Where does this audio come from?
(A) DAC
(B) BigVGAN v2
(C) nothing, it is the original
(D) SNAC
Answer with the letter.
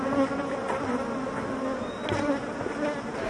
C